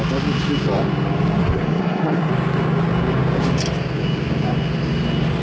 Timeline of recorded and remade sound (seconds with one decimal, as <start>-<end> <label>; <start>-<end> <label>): 0.0-1.4 recorded; 1.4-2.3 remade; 2.3-5.4 recorded